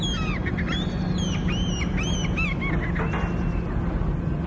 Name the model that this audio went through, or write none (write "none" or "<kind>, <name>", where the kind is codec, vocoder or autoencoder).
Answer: none